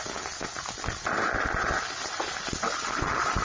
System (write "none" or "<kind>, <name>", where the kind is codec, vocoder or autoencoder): none